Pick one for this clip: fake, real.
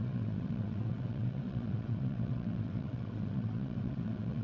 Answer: fake